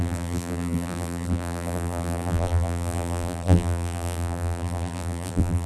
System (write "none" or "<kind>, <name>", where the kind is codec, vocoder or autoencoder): vocoder, BigVGAN v2